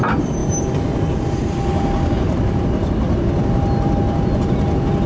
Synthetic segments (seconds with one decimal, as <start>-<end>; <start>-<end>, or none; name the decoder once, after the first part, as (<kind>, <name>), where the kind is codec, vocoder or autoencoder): none